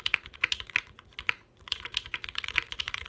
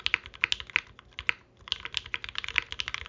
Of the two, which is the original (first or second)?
second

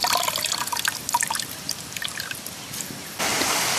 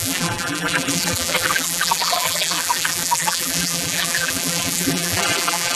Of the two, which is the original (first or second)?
first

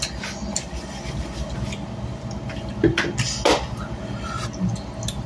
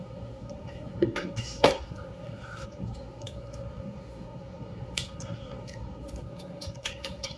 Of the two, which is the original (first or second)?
first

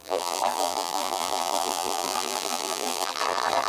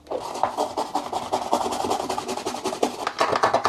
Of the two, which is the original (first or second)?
second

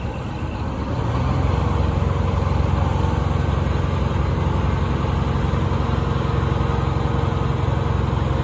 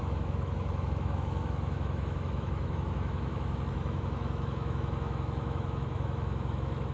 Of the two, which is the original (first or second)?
first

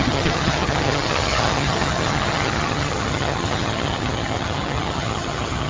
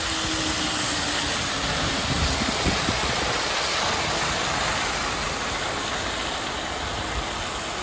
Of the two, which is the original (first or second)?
second